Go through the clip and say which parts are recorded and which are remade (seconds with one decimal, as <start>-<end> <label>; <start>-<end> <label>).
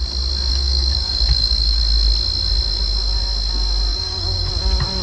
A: 0.0-0.5 recorded; 0.5-1.8 remade; 1.8-3.9 recorded; 3.9-4.5 remade; 4.5-5.0 recorded